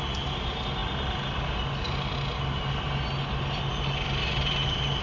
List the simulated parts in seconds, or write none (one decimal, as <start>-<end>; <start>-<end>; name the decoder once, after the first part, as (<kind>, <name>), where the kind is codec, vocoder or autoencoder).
none